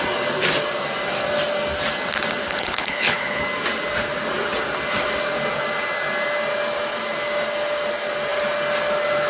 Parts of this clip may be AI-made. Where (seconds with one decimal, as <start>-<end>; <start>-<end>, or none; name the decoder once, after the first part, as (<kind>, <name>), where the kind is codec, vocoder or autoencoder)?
2.4-3.4 (codec, HILCodec)